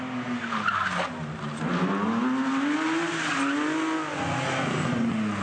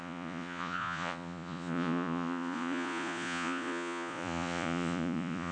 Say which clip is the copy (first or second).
second